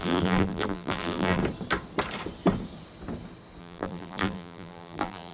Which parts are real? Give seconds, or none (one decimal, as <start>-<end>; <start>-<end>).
1.4-3.6